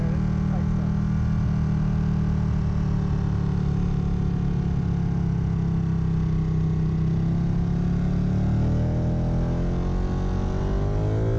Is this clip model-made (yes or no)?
no